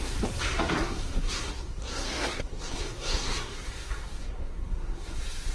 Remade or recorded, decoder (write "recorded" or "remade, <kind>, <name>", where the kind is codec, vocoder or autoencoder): remade, codec, SNAC